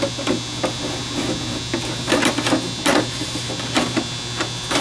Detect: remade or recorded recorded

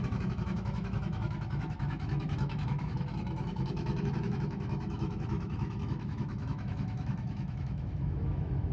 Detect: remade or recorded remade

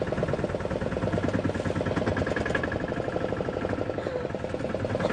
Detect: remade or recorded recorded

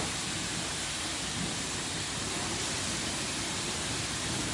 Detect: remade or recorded recorded